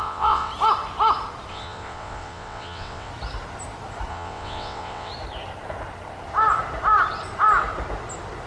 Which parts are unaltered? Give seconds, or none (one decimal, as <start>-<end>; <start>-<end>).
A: 0.5-1.5; 3.1-4.1; 5.1-8.5